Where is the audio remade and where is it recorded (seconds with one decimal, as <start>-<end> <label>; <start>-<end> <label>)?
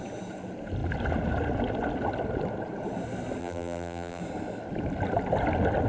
0.0-3.4 recorded; 3.4-4.2 remade; 4.2-5.9 recorded